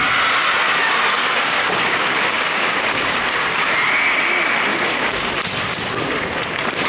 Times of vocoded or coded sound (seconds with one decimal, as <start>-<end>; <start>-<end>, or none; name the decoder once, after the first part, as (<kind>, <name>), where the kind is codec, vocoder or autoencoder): 1.2-3.2 (codec, DAC); 4.7-5.3